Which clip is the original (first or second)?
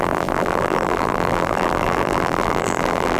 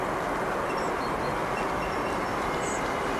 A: second